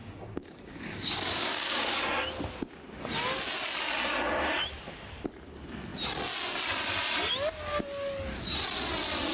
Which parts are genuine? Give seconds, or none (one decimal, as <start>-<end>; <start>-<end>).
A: 2.0-9.3